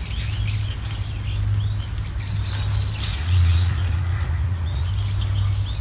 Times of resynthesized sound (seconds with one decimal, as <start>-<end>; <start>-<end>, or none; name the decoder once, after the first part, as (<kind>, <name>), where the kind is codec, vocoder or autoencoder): 3.1-4.9 (vocoder, Vocos)